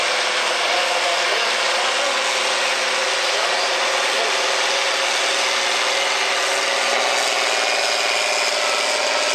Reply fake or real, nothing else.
real